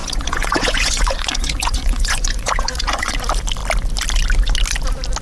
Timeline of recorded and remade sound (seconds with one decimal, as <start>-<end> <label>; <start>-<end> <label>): 0.0-3.1 remade; 3.1-5.2 recorded